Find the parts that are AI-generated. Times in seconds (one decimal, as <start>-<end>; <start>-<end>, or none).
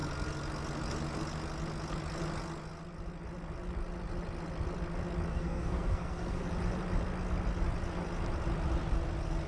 5.3-6.4